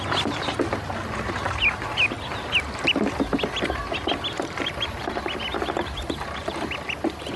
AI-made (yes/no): no